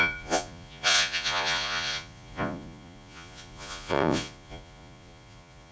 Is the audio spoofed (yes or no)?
yes